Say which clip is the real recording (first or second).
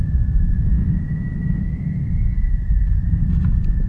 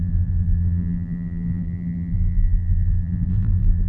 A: first